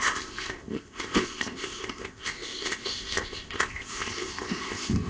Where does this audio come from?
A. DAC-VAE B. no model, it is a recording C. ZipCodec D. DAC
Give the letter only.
C